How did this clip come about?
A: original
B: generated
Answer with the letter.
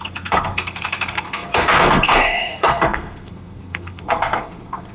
B